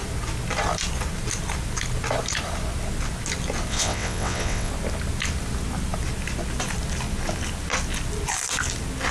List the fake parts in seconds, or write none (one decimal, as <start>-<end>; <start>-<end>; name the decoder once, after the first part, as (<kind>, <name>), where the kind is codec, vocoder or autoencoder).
3.7-4.7 (vocoder, WaveNeXt)